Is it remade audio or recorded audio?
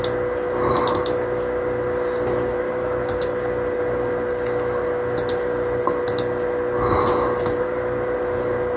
recorded